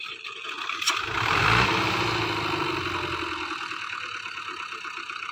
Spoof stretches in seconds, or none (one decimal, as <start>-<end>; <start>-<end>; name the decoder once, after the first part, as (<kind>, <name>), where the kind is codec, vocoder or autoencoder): none